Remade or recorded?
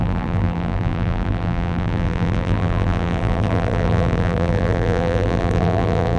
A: remade